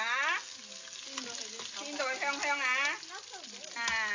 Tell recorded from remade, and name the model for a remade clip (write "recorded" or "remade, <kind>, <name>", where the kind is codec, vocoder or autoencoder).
recorded